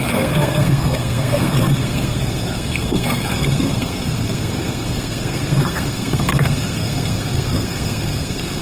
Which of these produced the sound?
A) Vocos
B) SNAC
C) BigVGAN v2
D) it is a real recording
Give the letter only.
B